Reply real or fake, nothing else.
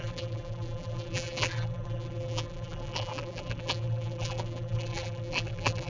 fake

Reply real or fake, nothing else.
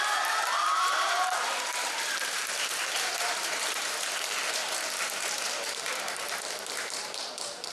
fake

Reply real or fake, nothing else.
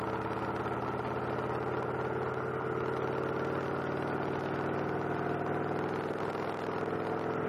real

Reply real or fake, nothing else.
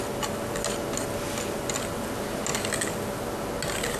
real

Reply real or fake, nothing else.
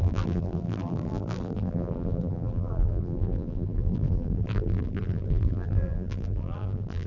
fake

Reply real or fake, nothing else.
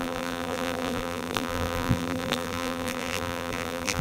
fake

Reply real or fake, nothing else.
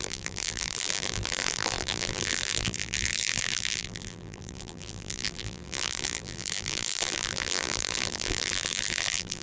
fake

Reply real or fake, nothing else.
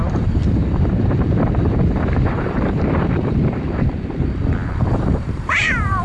fake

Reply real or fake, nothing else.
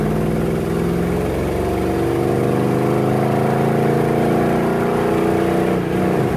real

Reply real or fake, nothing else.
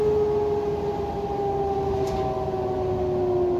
real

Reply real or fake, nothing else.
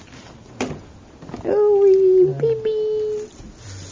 real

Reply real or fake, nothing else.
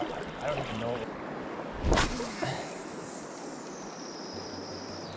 real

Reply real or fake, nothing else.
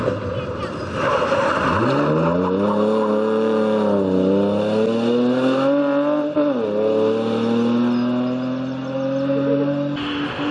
real